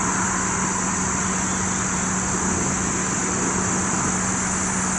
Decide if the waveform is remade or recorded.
recorded